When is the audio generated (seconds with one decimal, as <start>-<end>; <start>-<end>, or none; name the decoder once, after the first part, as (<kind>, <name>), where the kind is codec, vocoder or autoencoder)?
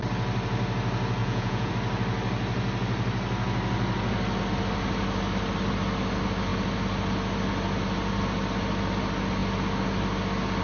1.2-1.7 (vocoder, Vocos)